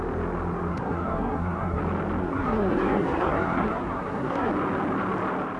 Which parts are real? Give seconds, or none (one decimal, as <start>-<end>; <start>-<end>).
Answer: 0.0-0.7; 1.8-2.2; 4.5-5.6